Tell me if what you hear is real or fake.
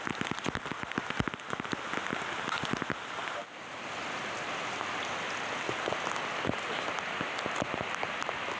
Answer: real